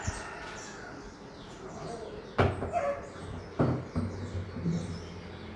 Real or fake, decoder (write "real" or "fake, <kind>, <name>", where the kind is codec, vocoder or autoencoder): real